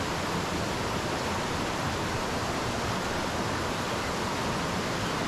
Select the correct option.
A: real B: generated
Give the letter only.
A